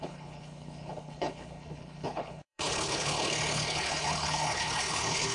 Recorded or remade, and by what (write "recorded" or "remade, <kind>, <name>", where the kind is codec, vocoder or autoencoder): remade, codec, HILCodec